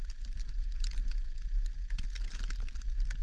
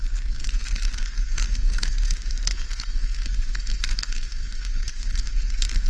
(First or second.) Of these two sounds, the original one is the first